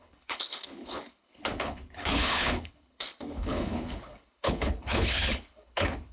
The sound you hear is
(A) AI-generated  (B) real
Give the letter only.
A